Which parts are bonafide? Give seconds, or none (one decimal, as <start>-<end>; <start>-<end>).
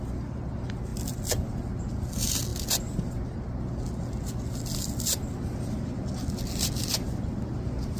0.0-8.0